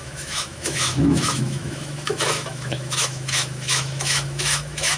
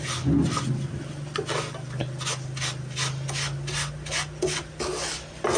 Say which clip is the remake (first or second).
first